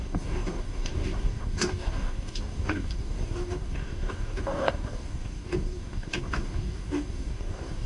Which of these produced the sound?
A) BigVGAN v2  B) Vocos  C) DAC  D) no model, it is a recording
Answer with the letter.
C